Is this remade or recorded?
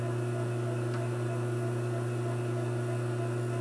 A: recorded